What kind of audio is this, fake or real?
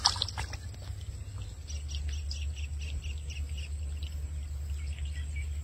real